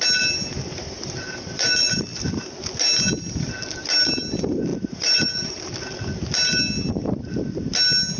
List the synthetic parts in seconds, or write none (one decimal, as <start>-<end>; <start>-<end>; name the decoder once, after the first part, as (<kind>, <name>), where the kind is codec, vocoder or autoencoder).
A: 0.5-2.0 (vocoder, BigVGAN v2); 4.7-5.7